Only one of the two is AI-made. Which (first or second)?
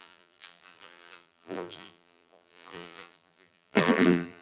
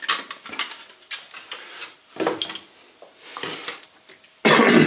first